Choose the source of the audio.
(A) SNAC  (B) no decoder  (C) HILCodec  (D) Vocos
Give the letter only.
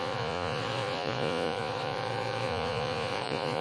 D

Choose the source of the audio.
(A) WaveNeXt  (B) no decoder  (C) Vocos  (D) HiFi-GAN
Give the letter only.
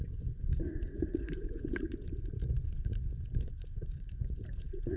C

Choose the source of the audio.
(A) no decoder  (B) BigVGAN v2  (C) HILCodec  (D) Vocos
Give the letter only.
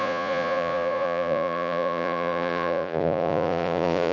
D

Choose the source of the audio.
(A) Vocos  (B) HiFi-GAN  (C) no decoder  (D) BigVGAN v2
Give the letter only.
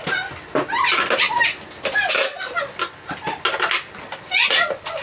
C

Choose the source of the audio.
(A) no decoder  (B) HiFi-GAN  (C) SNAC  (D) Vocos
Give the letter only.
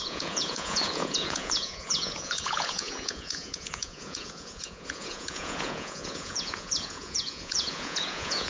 D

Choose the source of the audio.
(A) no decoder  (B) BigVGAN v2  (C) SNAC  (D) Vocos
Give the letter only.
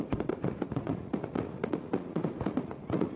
D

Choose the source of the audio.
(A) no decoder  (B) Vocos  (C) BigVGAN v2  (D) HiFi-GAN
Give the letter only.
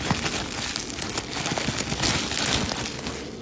A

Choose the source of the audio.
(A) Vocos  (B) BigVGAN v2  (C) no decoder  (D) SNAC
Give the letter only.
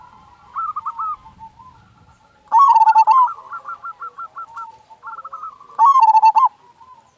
C